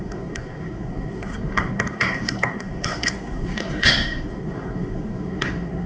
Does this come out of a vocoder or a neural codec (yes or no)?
yes